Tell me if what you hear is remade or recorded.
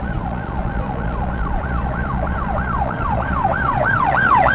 remade